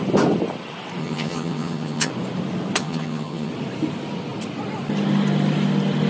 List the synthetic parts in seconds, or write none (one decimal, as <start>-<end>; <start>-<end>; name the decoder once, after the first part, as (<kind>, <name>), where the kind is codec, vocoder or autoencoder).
1.0-2.1 (vocoder, HiFi-GAN); 2.8-3.5